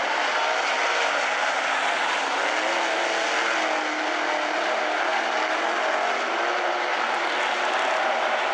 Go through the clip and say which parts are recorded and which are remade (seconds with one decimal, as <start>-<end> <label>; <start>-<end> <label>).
0.0-8.5 recorded